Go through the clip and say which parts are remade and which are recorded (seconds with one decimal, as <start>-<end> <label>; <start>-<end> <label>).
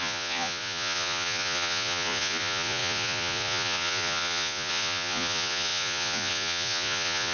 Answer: 0.0-7.3 remade